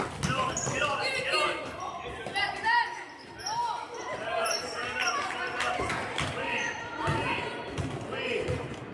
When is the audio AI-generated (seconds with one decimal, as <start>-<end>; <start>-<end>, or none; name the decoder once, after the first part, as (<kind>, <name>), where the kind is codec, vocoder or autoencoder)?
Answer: none